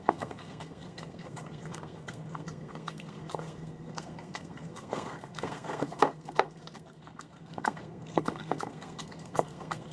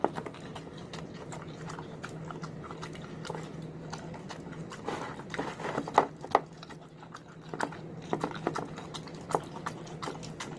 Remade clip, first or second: first